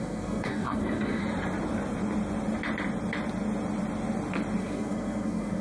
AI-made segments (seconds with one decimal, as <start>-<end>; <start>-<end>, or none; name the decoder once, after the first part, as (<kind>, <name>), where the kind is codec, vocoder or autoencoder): 0.0-1.2 (codec, SNAC); 4.6-5.6